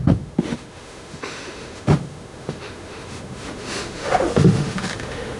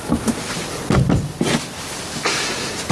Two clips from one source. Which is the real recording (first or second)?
second